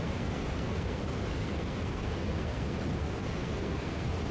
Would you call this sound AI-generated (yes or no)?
yes